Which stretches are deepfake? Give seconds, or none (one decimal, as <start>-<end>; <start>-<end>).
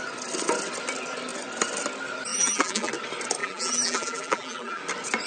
2.3-2.9; 3.4-4.8